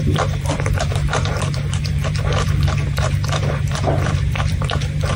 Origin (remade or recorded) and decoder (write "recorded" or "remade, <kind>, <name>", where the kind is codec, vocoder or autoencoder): remade, vocoder, BigVGAN v2